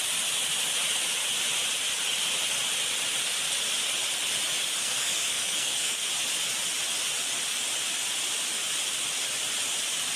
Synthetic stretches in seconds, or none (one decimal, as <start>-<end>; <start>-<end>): 4.8-6.1